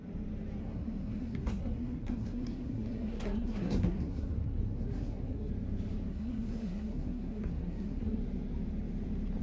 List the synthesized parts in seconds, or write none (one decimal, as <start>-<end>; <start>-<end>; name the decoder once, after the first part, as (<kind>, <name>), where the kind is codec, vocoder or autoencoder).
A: 0.6-5.5 (codec, SNAC); 6.1-8.2